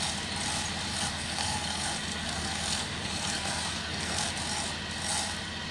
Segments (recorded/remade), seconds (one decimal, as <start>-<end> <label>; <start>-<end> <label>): 0.0-0.9 recorded; 0.9-4.3 remade; 4.3-5.7 recorded